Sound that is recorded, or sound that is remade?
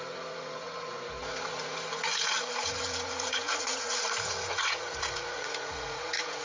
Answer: remade